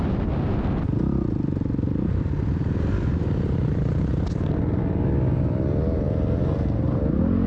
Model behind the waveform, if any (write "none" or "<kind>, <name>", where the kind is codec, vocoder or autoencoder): none